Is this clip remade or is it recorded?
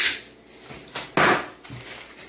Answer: recorded